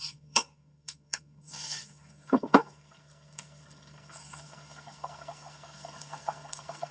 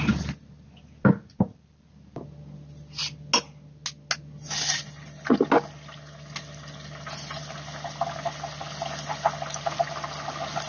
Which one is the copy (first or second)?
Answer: first